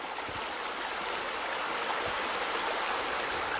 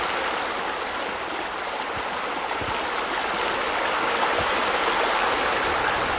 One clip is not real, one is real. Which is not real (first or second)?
first